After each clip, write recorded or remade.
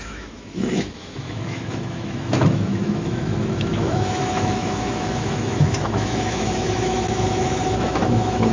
remade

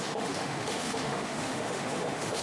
remade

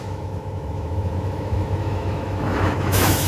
remade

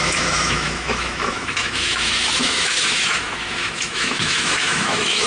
remade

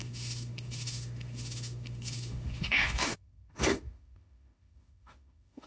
remade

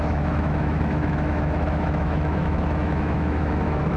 remade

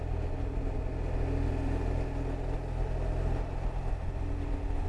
recorded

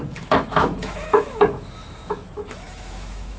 remade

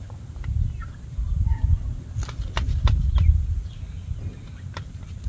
recorded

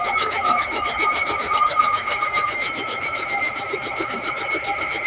remade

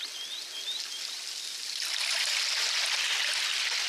recorded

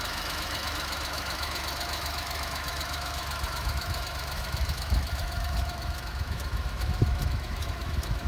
remade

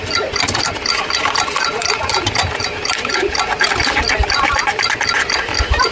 recorded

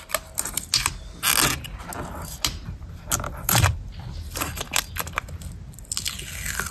recorded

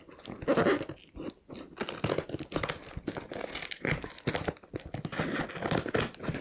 recorded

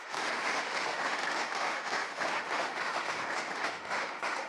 remade